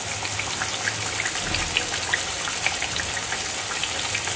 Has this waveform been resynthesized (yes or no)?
no